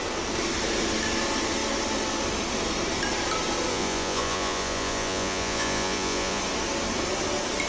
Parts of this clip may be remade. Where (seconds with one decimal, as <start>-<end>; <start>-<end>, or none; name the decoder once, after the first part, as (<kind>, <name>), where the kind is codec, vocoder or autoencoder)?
3.7-6.4 (vocoder, Vocos)